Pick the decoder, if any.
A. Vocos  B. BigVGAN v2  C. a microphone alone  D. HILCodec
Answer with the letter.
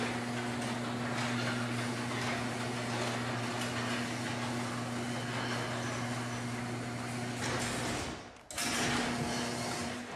C